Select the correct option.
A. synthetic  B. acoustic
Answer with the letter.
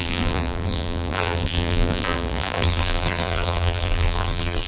A